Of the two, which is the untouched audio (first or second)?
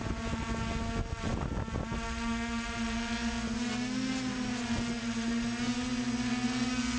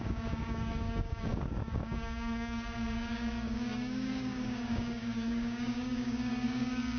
first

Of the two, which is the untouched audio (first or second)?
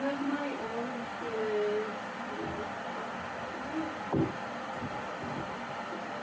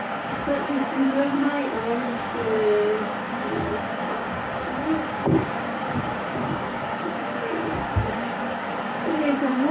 first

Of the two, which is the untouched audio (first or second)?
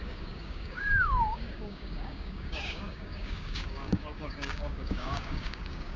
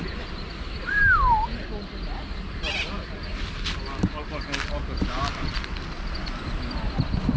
second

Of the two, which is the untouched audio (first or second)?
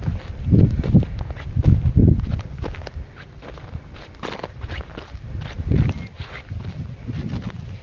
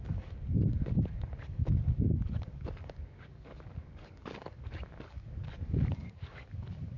first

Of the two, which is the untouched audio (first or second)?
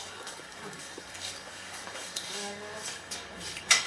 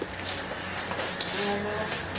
second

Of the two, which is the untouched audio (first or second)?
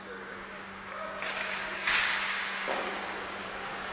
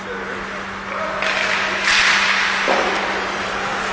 second